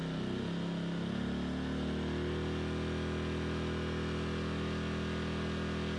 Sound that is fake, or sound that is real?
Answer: real